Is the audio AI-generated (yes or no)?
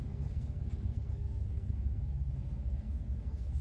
yes